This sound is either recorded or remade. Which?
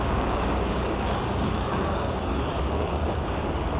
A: remade